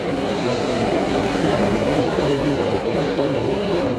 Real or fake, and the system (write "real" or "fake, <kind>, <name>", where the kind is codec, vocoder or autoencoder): fake, codec, SNAC